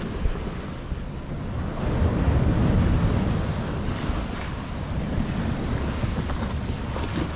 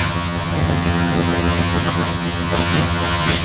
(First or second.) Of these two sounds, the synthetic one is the second